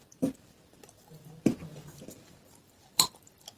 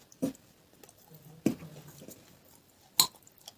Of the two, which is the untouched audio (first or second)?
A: second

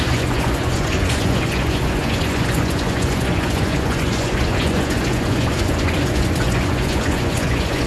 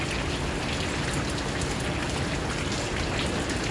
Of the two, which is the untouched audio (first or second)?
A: second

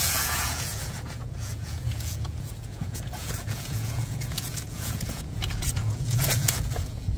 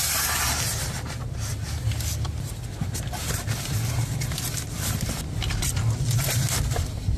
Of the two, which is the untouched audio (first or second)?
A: second